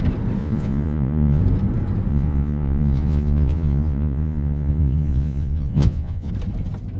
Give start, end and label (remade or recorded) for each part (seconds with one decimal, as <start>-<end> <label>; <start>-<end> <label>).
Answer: 0.0-0.4 recorded; 0.4-1.4 remade; 1.4-2.1 recorded; 2.1-6.3 remade; 6.3-7.0 recorded